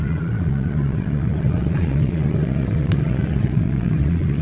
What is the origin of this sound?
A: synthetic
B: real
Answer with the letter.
A